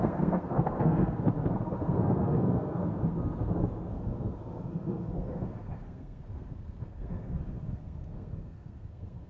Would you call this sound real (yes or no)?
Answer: no